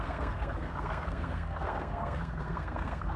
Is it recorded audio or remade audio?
remade